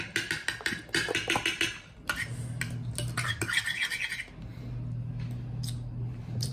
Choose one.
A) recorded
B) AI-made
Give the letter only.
A